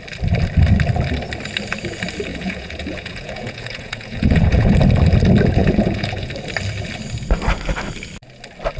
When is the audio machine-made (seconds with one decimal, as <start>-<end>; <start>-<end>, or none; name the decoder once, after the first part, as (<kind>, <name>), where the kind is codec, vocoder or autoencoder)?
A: 2.3-4.7 (vocoder, Vocos); 5.6-6.3